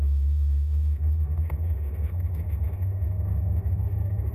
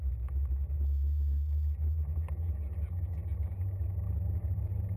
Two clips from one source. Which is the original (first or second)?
second